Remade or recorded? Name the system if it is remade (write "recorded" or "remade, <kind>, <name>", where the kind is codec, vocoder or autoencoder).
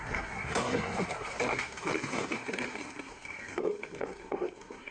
remade, codec, SNAC